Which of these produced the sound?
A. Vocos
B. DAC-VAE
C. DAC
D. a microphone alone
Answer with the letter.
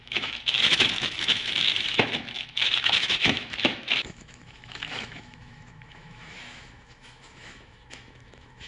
B